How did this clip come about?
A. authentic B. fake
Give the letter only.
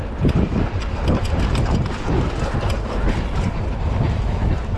A